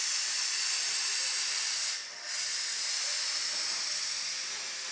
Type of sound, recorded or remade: recorded